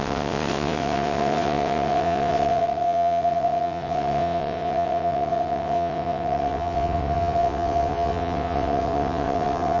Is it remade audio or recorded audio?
remade